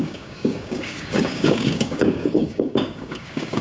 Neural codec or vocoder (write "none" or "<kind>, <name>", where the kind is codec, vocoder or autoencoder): codec, DAC